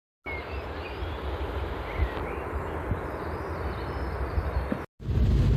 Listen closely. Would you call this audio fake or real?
real